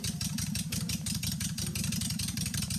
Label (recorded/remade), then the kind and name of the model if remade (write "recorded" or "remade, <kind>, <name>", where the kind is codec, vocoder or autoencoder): remade, vocoder, BigVGAN v2